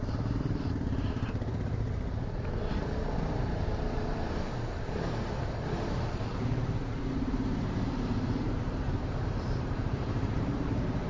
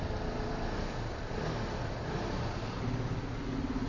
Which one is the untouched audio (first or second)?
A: second